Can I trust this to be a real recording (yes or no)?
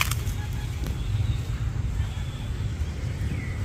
yes